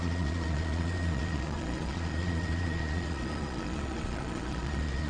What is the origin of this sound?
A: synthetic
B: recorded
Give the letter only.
A